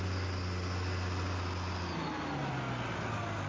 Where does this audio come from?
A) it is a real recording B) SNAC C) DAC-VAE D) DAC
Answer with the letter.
A